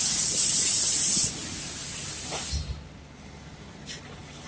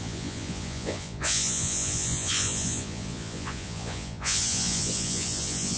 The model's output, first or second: second